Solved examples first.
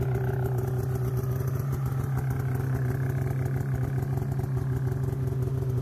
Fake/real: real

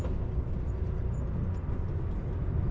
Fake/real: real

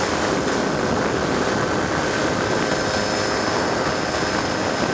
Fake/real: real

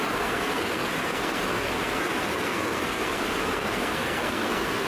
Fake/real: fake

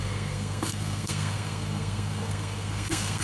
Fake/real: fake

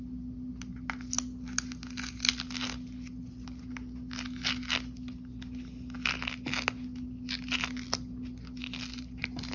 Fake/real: real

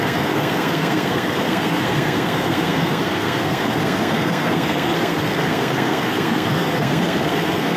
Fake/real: fake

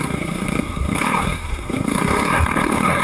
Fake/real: fake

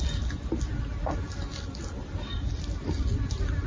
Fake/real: real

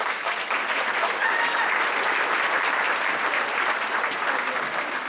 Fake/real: real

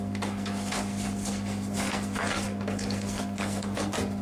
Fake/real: fake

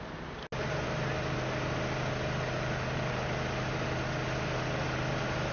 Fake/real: real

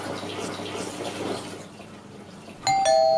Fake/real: real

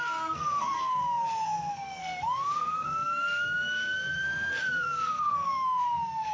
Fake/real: fake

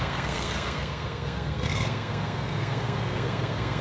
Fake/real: fake